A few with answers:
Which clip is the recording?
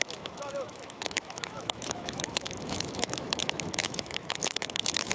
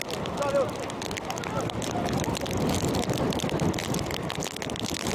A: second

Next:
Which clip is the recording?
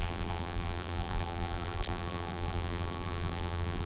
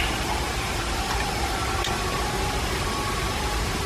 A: second